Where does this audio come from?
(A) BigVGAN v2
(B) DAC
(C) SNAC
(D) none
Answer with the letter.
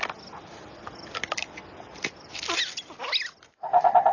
D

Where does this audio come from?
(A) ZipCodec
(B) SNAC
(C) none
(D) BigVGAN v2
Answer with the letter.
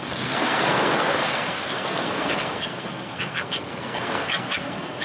B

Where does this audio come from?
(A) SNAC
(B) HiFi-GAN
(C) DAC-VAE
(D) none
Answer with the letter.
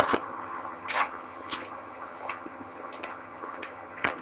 B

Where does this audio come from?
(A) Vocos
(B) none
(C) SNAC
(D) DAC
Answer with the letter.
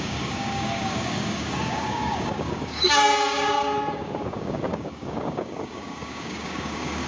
D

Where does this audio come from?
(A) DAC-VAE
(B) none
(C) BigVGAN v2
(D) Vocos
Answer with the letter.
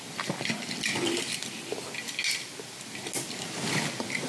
B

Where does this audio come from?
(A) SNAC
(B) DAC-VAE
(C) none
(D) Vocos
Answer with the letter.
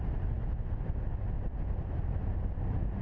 C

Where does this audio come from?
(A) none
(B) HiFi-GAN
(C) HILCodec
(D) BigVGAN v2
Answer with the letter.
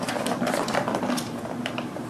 D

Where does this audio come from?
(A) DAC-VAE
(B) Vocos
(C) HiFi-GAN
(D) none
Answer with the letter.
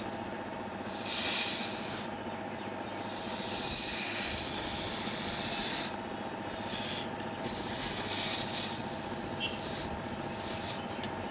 D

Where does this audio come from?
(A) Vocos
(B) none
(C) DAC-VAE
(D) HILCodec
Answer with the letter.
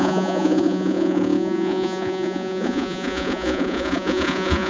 A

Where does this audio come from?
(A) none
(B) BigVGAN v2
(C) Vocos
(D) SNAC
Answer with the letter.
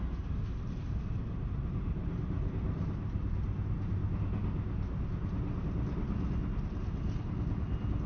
A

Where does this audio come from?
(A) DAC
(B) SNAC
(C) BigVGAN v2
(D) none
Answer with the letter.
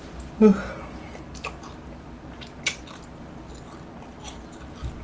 D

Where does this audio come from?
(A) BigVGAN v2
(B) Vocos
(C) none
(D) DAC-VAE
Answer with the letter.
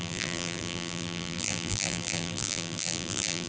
A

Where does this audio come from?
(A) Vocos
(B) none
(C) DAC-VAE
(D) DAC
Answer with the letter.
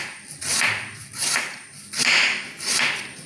B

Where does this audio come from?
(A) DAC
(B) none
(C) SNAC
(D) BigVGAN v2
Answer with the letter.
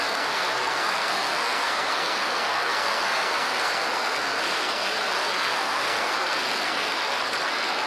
C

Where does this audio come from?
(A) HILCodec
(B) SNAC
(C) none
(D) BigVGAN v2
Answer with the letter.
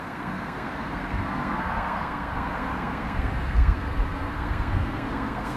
B